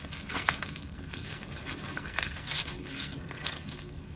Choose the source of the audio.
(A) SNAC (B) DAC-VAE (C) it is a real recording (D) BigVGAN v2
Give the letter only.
A